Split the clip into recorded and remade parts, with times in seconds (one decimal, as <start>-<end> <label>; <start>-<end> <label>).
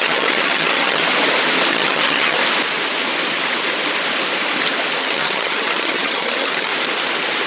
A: 0.0-1.0 remade; 1.0-1.7 recorded; 1.7-2.4 remade; 2.4-5.0 recorded; 5.0-6.7 remade; 6.7-7.5 recorded